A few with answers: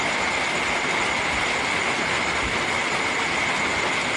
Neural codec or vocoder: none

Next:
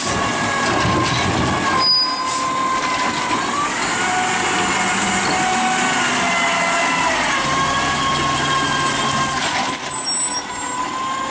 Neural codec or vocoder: none